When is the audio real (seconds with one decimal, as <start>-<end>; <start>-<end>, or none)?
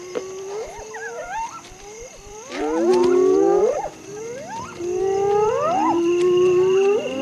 none